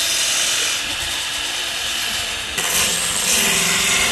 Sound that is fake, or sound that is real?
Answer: real